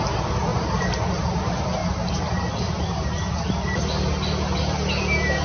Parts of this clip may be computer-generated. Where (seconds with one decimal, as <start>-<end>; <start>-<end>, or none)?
none